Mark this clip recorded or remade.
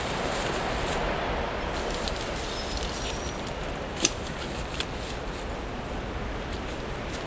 recorded